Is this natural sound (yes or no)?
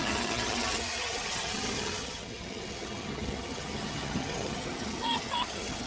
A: no